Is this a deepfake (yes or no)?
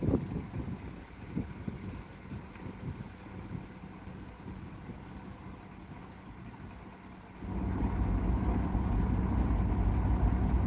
no